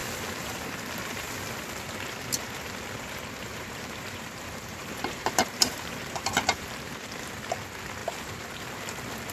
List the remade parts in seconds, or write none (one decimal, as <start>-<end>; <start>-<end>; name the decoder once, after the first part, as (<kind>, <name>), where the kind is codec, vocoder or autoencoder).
3.5-6.9 (vocoder, BigVGAN v2); 8.0-8.6